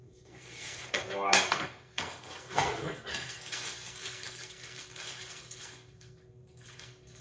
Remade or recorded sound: remade